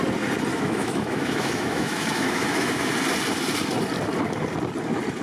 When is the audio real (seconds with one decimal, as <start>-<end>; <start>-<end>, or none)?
0.0-0.5; 2.9-5.2